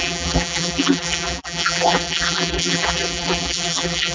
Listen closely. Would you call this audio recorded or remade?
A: remade